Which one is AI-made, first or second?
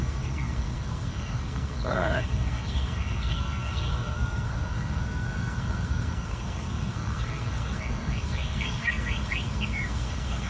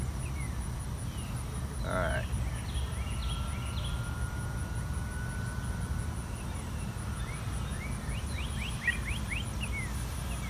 first